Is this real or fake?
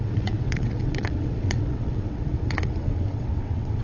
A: fake